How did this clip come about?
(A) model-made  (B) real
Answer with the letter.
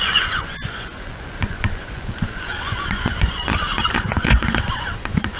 A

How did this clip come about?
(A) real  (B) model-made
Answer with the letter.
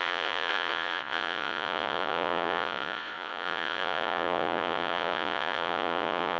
B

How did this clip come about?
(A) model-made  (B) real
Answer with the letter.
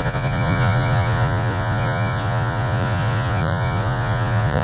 A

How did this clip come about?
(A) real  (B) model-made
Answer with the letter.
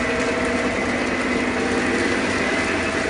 A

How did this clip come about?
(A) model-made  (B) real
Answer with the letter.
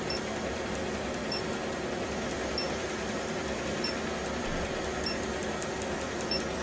B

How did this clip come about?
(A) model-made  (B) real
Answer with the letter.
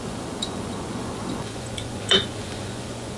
A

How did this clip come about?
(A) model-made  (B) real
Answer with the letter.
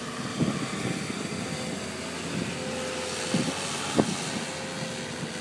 B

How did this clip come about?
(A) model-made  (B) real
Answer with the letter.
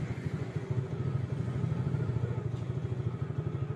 A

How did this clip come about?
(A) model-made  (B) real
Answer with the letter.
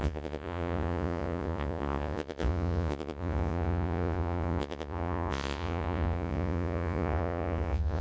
A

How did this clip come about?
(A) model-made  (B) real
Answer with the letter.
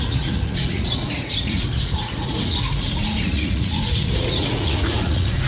A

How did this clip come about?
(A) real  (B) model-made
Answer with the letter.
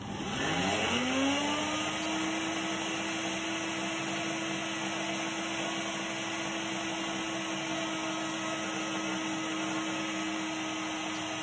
A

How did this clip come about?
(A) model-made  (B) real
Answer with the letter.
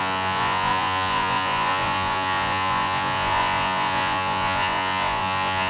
A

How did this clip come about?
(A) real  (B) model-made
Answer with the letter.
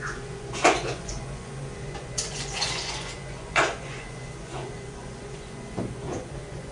B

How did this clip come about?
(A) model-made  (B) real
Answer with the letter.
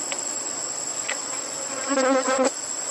A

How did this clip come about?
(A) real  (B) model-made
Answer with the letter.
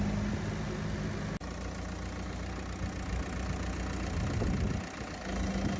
A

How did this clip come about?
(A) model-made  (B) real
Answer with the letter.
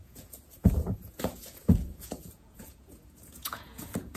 A